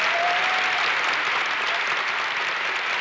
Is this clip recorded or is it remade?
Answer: recorded